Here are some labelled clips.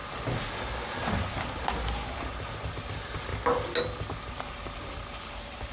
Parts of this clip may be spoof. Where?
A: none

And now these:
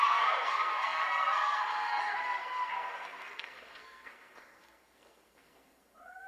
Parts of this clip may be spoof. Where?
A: 0.0-6.3

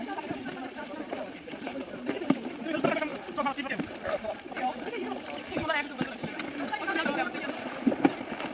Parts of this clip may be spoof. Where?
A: none

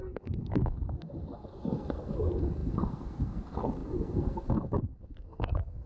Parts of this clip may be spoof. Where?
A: 0.0-5.9

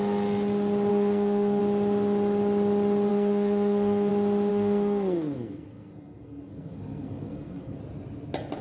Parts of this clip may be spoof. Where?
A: 0.9-1.6; 3.1-4.1; 4.5-7.8

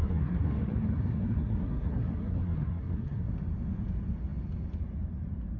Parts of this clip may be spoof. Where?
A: 0.0-3.3